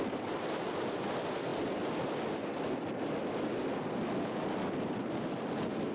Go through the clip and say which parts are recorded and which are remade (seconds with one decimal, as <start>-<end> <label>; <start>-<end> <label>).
0.0-5.9 recorded